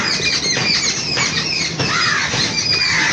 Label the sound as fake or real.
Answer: real